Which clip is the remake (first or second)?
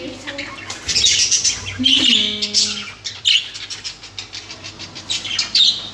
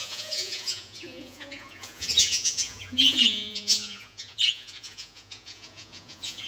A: second